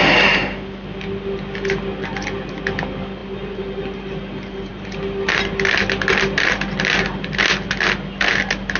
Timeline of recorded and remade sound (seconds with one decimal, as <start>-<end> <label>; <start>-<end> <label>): 0.0-8.8 recorded